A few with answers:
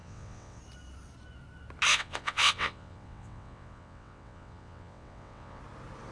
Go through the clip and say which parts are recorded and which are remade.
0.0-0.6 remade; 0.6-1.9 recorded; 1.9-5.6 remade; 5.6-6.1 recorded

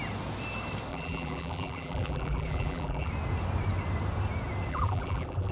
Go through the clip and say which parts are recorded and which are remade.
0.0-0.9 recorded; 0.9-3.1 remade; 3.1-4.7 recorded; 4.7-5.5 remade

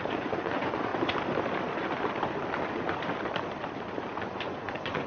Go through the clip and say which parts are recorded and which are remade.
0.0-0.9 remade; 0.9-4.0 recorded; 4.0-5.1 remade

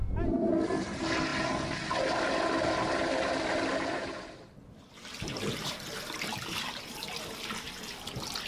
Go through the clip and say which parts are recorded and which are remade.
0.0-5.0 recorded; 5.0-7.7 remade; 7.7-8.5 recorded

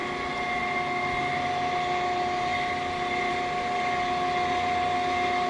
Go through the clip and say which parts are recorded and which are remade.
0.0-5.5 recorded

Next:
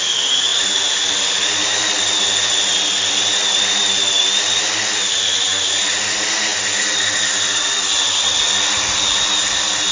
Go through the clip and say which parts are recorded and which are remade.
0.0-0.5 recorded; 0.5-5.4 remade; 5.4-9.9 recorded

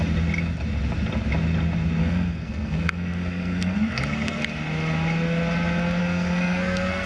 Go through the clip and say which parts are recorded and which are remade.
0.0-2.0 recorded; 2.0-4.4 remade; 4.4-6.0 recorded; 6.0-7.1 remade

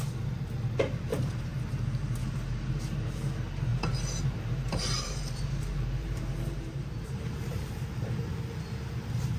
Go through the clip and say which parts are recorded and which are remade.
0.0-1.1 recorded; 1.1-1.6 remade; 1.6-2.2 recorded; 2.2-2.8 remade; 2.8-3.7 recorded; 3.7-8.3 remade; 8.3-9.4 recorded